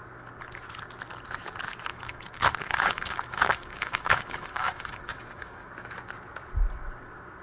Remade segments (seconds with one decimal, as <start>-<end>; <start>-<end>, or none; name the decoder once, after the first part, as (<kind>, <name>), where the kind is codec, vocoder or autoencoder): 1.9-5.7 (codec, DAC)